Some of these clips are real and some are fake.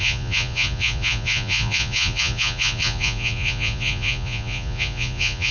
fake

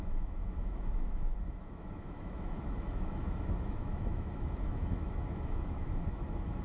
fake